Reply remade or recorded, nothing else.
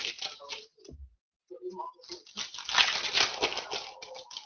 recorded